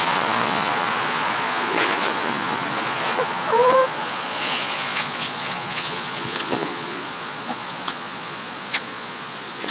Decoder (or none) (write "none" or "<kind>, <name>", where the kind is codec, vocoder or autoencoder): vocoder, Vocos